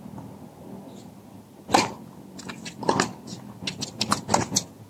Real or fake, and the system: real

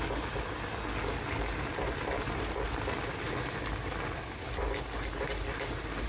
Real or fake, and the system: real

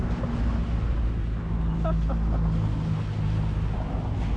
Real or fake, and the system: real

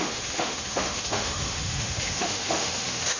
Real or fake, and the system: fake, autoencoder, DAC-VAE